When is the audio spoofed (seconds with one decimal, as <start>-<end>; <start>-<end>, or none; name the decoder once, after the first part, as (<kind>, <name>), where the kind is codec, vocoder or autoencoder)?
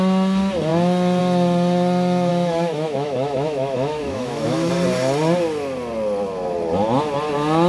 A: 2.3-4.7 (autoencoder, DAC-VAE)